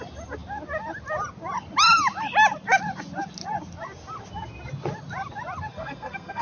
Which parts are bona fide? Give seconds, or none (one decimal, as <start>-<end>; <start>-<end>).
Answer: 0.0-5.7